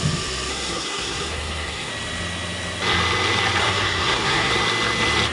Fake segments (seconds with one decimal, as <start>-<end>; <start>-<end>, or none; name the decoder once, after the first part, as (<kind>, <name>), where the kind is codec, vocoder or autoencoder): 0.5-1.9 (codec, SNAC); 3.6-4.5